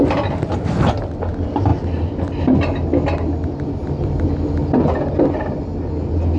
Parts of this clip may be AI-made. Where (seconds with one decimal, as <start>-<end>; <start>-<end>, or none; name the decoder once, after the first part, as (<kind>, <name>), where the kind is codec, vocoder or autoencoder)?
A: none